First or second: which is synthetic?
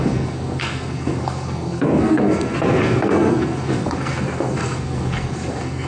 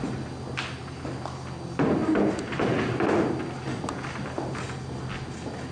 first